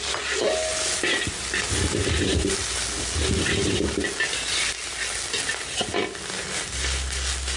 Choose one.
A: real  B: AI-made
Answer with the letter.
A